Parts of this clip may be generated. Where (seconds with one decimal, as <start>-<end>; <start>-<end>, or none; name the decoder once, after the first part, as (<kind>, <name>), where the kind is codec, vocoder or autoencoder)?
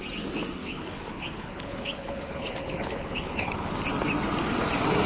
0.6-3.7 (codec, HILCodec)